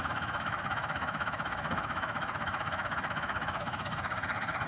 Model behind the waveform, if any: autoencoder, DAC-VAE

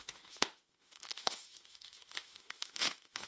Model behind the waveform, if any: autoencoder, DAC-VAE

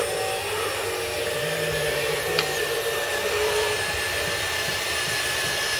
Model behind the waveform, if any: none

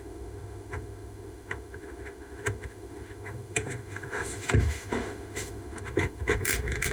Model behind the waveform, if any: autoencoder, DAC-VAE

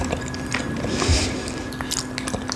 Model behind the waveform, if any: none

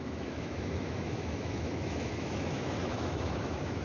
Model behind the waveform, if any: autoencoder, DAC-VAE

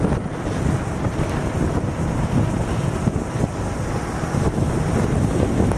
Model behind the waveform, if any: none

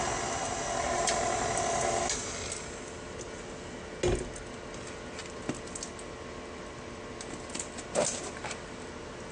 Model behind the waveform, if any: none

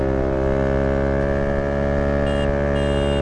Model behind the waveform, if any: none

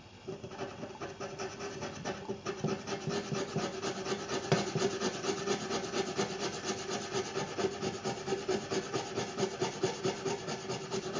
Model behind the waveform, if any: none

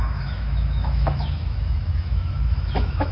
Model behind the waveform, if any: autoencoder, DAC-VAE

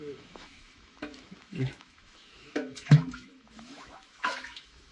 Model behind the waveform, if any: autoencoder, DAC-VAE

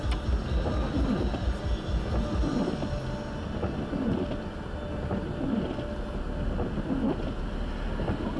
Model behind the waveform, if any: none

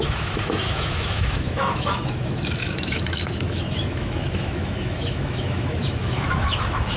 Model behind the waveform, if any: autoencoder, DAC-VAE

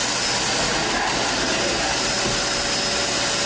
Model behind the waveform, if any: none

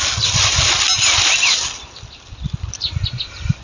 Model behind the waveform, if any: none